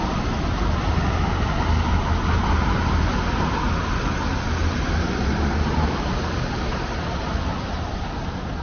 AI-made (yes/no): no